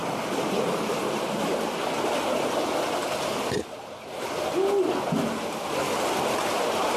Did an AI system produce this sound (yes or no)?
no